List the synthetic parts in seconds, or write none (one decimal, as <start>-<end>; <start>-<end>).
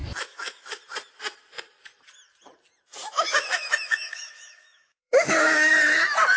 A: 0.0-0.8; 3.1-5.7